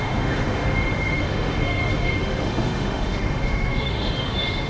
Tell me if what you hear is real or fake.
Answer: fake